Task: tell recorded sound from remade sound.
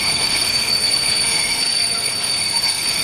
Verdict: remade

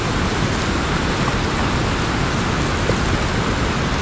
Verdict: recorded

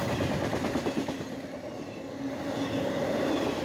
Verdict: recorded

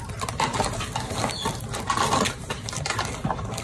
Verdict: recorded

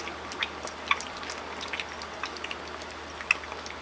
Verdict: recorded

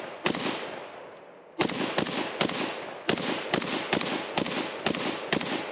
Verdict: recorded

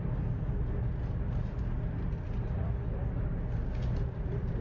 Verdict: recorded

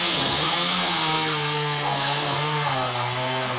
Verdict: remade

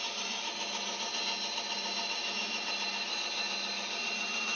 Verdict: recorded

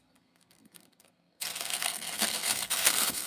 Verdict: remade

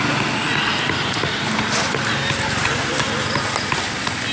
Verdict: recorded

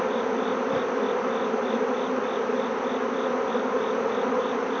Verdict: recorded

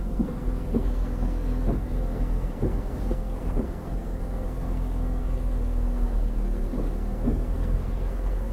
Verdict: remade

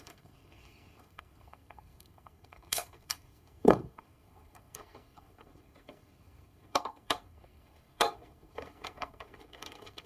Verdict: remade